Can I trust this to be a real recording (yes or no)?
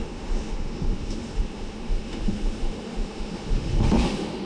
no